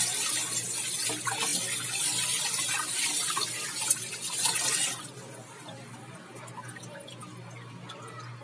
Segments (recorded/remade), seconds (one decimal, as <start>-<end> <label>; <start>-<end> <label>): 0.0-8.4 recorded